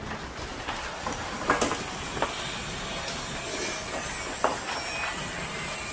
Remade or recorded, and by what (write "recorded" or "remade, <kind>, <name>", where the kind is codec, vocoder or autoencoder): recorded